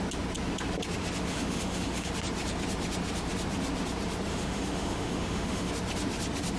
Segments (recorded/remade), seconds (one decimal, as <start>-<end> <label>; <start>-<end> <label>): 0.0-1.3 recorded; 1.3-2.1 remade; 2.1-4.3 recorded; 4.3-5.7 remade; 5.7-6.6 recorded